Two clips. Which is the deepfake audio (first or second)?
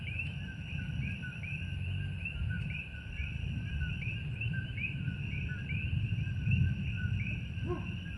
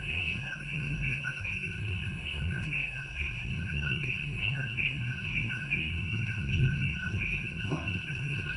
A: second